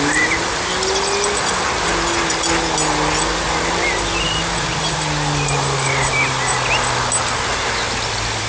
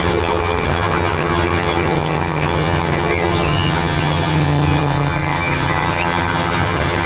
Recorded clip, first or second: first